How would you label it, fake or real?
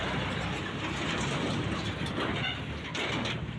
real